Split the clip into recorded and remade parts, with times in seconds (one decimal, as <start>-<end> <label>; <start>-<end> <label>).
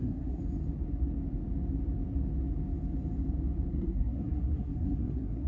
0.0-0.4 remade; 0.4-3.7 recorded; 3.7-5.5 remade